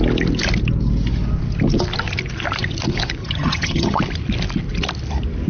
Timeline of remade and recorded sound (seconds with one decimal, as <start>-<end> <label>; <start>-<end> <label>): 0.0-3.2 recorded; 3.2-4.0 remade; 4.0-5.5 recorded